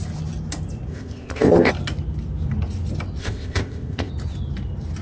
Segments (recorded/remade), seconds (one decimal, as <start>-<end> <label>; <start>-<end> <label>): 0.0-0.9 recorded; 0.9-1.7 remade; 1.7-3.2 recorded; 3.2-4.1 remade; 4.1-5.0 recorded